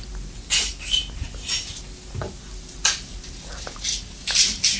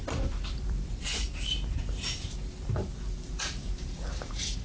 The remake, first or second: second